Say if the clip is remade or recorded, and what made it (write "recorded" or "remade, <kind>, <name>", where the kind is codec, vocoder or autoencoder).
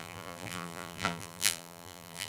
remade, vocoder, BigVGAN v2